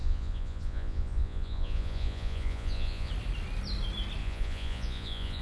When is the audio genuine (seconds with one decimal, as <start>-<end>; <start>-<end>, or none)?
3.1-4.2